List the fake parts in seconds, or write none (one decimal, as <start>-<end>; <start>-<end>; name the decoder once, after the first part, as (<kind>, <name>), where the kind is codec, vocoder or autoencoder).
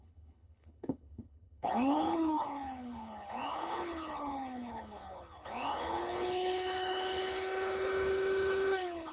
0.0-9.1 (codec, HILCodec)